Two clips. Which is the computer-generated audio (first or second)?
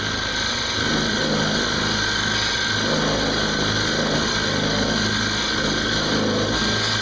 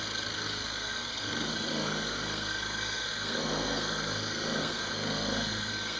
second